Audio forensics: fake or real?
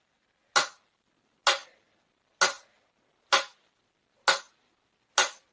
real